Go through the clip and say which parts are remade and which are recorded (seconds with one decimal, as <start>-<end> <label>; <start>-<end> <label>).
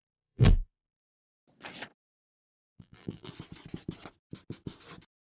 0.0-1.1 remade; 1.1-2.0 recorded; 2.0-3.3 remade; 3.3-5.3 recorded